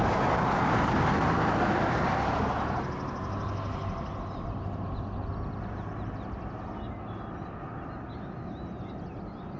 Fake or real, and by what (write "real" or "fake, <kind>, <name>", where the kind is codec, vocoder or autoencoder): real